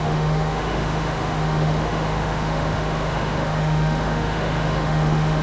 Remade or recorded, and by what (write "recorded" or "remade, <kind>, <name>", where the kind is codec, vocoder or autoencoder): remade, autoencoder, DAC-VAE